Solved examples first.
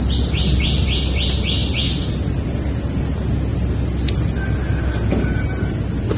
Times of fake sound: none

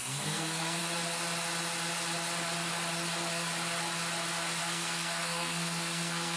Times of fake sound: 0.0-0.8 (codec, SNAC); 4.6-6.4

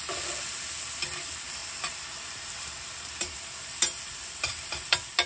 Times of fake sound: none

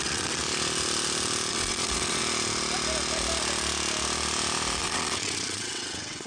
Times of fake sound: 0.0-0.4 (vocoder, WaveNeXt); 1.5-2.2; 4.8-6.3

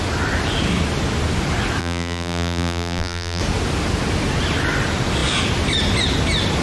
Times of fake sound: 1.8-3.4 (vocoder, BigVGAN v2)

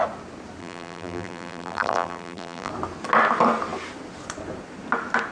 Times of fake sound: 0.6-2.7 (vocoder, BigVGAN v2)

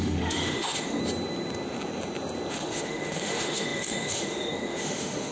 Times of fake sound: 0.0-1.0 (autoencoder, DAC-VAE); 2.5-5.3